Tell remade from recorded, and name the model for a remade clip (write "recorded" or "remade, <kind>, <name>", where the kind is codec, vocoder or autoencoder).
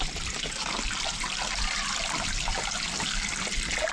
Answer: recorded